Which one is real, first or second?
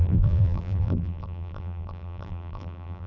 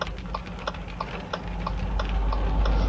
second